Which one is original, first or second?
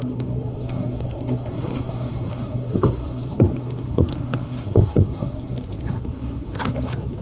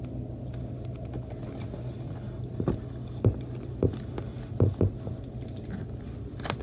second